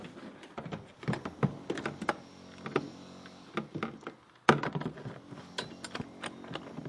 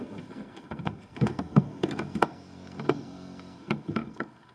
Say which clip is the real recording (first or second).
first